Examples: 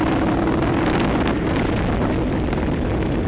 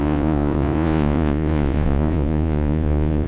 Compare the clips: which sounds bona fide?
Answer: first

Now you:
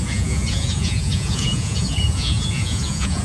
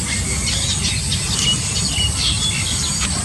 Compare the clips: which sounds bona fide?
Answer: second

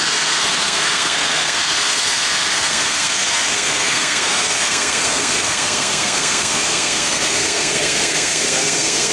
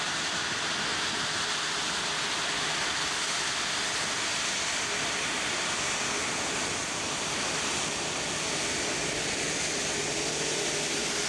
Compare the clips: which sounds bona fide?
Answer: second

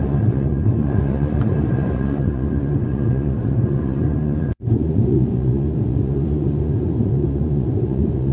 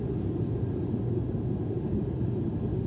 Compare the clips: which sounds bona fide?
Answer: second